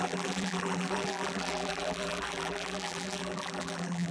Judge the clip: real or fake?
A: fake